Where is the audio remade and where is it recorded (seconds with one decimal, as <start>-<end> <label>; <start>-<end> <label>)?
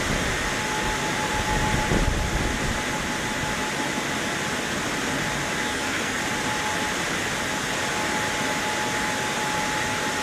0.0-5.7 recorded; 5.7-6.2 remade; 6.2-10.2 recorded